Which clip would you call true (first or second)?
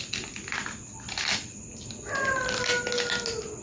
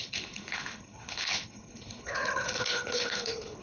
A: first